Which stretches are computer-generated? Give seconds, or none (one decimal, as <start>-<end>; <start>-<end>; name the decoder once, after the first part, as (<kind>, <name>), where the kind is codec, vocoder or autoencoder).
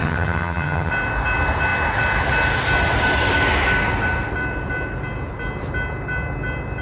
0.0-0.9 (vocoder, HiFi-GAN)